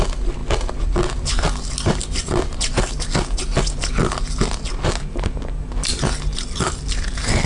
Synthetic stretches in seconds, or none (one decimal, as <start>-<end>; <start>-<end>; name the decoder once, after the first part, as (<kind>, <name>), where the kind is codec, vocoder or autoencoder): none